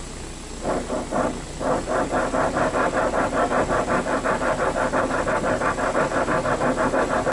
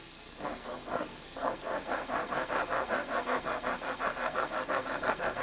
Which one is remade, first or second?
second